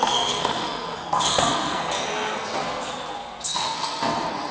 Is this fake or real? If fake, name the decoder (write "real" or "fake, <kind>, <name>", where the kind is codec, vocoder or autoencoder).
fake, codec, SNAC